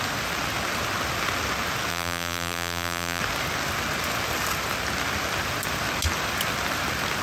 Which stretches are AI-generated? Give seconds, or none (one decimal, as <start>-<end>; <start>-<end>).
1.9-3.2